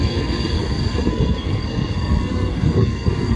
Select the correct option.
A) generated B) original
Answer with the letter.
A